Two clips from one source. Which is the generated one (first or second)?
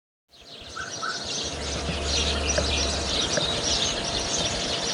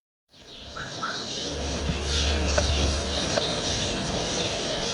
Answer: second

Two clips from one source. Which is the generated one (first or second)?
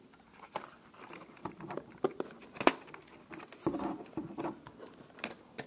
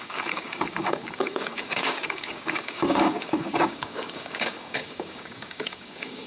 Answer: second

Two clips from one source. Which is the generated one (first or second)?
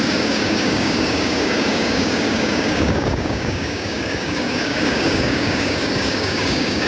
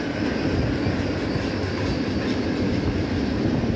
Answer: first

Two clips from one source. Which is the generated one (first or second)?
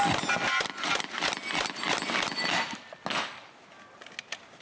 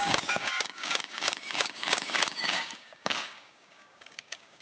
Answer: second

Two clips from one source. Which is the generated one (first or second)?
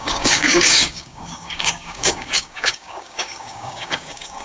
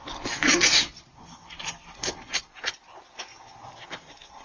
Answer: first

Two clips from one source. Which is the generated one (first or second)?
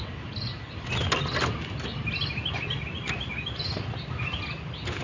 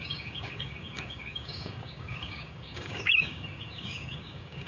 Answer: second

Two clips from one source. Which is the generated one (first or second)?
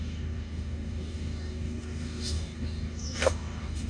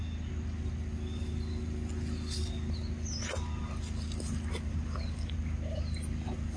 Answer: first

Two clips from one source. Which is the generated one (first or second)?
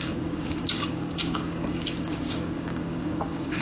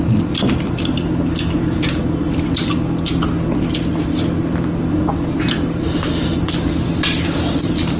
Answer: first